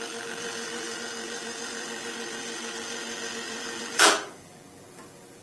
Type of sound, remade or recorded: remade